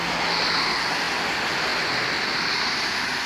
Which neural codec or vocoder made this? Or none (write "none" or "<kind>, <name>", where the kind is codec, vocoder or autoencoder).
none